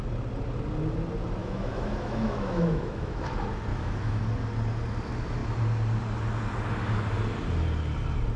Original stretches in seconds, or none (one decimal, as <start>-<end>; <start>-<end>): 0.0-1.4; 3.3-3.7; 4.2-8.4